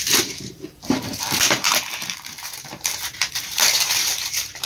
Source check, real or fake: fake